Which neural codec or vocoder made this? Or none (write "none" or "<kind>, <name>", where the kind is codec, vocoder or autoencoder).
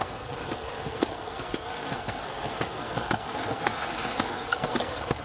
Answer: codec, SNAC